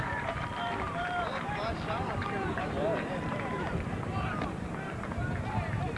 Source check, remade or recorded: remade